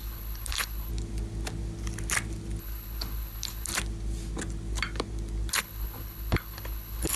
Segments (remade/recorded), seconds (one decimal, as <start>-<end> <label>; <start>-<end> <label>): 0.0-0.9 remade; 0.9-2.6 recorded; 2.6-3.7 remade; 3.7-5.5 recorded; 5.5-7.2 remade